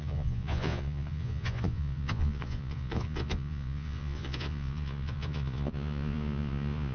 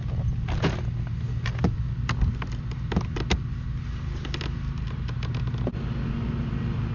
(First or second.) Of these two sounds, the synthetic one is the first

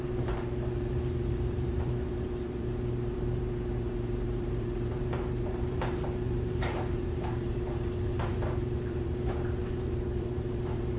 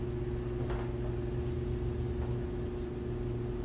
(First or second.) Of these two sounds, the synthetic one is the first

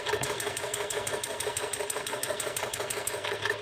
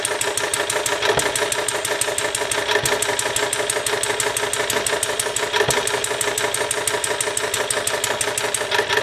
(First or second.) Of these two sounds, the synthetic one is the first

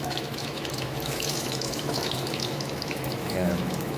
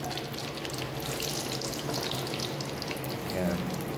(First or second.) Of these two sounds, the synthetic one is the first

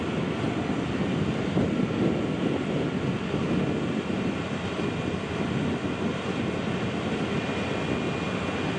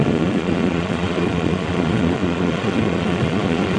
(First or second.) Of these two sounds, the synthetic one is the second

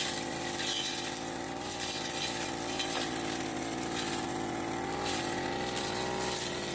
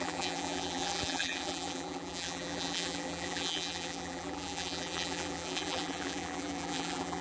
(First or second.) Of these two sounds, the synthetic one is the second